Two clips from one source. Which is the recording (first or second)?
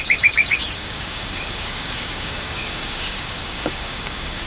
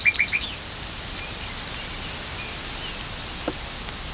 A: second